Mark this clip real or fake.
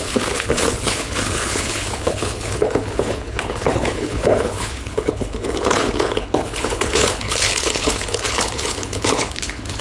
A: fake